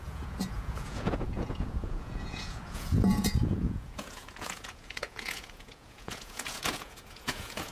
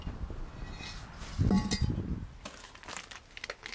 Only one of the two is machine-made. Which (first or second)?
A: first